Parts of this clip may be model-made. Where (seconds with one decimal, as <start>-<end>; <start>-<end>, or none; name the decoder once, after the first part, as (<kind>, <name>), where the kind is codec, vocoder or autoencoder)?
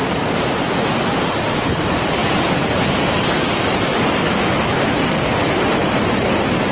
0.0-0.7 (vocoder, BigVGAN v2); 5.8-6.3